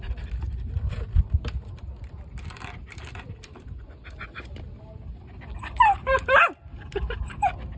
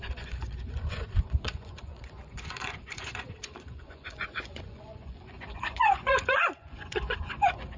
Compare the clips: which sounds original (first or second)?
first